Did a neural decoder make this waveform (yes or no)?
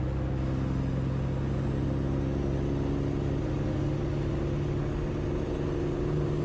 no